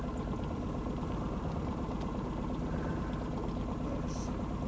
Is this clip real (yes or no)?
yes